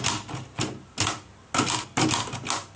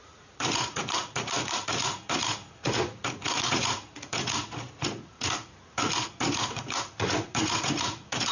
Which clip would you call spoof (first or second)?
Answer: second